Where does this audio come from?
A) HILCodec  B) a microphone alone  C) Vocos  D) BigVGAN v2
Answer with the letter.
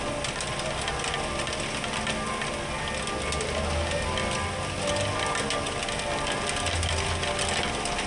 B